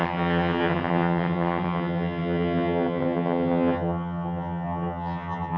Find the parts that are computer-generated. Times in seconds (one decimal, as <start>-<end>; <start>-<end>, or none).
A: 0.0-5.6